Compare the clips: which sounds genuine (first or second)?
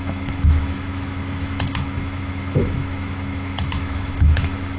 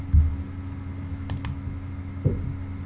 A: second